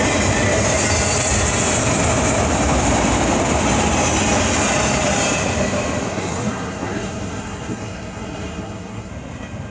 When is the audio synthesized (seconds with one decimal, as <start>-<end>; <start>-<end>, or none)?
6.1-9.1